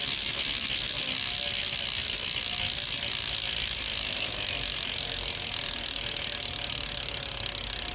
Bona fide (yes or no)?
yes